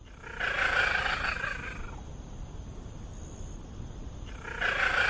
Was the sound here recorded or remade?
recorded